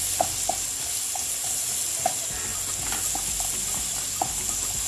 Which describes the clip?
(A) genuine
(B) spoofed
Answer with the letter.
A